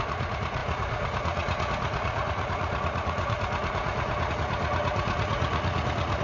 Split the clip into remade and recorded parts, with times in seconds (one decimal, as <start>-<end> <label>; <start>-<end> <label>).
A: 0.0-6.2 remade